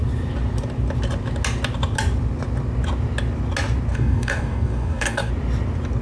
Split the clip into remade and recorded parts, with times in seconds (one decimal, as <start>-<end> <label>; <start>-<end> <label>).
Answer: 0.0-3.9 recorded; 3.9-5.3 remade; 5.3-6.0 recorded